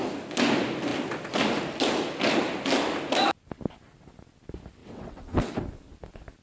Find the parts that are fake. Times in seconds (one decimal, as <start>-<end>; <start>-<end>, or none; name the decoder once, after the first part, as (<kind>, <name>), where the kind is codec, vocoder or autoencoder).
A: 4.8-5.5 (vocoder, WaveNeXt)